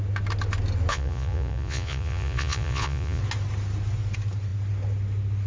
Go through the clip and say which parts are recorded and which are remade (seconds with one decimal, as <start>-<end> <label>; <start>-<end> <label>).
0.0-0.9 recorded; 0.9-3.2 remade; 3.2-5.5 recorded